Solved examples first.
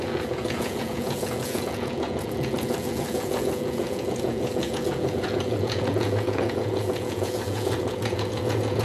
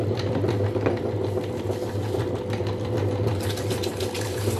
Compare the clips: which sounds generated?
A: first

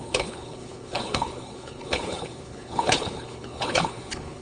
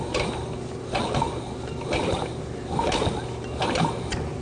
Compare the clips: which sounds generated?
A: first